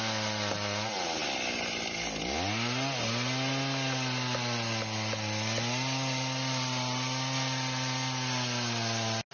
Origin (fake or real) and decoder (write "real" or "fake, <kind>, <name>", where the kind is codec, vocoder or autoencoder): real